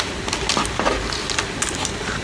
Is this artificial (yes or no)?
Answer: no